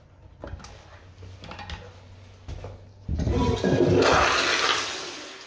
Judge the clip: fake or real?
real